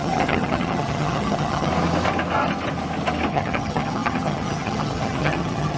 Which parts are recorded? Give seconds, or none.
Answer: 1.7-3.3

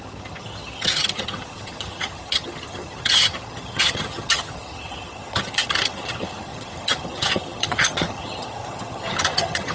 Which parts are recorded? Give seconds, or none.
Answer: none

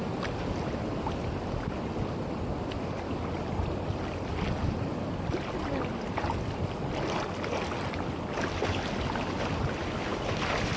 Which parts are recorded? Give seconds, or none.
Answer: 0.0-10.8

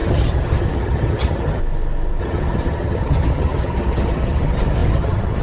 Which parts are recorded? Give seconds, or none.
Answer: 1.6-2.2

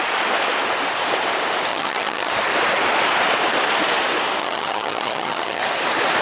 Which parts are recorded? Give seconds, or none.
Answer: 0.0-1.7; 2.3-4.4; 5.6-6.2

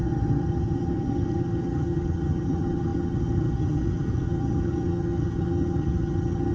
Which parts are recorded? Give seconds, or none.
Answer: none

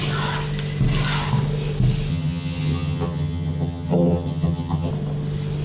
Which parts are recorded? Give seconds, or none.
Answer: 0.0-2.1; 4.9-5.6

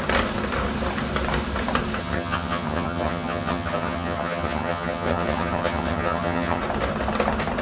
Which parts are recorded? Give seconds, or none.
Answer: 0.0-2.0; 6.6-7.6